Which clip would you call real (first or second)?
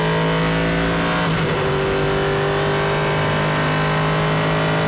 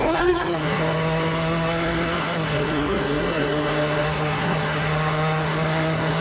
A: first